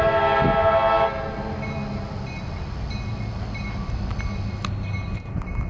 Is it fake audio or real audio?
real